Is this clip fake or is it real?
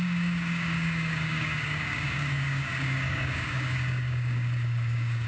fake